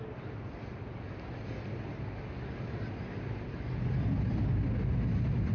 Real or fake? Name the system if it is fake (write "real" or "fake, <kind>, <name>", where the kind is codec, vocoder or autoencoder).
real